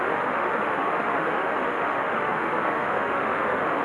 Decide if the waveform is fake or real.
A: fake